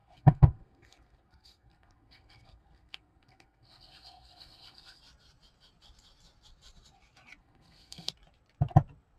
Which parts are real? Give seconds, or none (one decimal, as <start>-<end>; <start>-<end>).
5.0-7.4; 8.1-9.2